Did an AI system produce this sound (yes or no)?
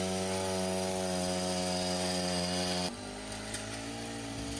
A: no